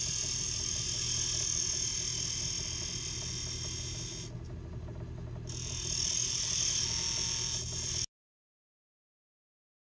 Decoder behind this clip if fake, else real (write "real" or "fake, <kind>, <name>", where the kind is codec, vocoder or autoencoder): real